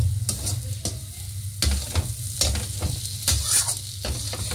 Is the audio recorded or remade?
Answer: recorded